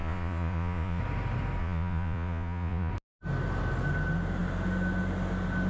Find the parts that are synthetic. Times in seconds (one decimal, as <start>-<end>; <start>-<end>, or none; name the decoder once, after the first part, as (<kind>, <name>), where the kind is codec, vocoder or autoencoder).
0.0-1.0 (vocoder, Vocos); 1.6-2.9